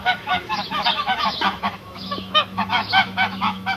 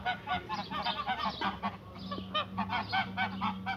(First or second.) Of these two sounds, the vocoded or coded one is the first